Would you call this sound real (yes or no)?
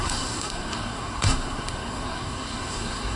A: no